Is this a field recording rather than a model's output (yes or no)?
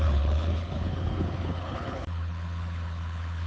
no